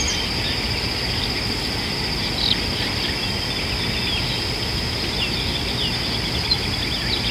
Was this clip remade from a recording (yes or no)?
no